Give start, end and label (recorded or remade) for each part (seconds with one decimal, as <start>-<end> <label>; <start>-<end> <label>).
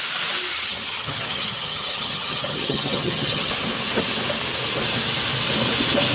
0.0-0.5 recorded; 0.5-3.5 remade; 3.5-6.1 recorded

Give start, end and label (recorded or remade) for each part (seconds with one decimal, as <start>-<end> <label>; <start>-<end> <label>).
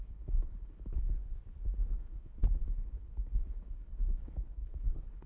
0.0-1.2 remade; 1.2-1.9 recorded; 1.9-5.3 remade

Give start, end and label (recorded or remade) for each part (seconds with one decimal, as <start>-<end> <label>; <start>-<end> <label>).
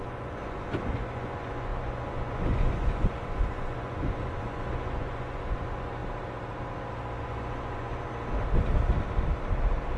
0.0-6.0 remade; 6.0-7.2 recorded; 7.2-8.1 remade; 8.1-10.0 recorded